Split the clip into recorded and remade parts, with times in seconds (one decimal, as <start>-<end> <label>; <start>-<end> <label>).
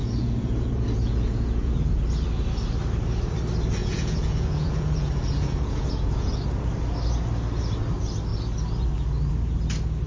0.0-2.0 remade; 2.0-3.8 recorded; 3.8-6.3 remade; 6.3-10.1 recorded